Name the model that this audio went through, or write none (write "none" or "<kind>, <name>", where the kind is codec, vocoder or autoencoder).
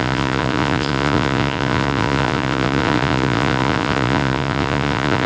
vocoder, Vocos